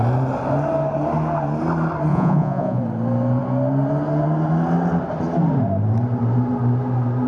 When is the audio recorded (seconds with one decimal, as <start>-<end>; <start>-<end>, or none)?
0.0-2.1; 2.8-7.3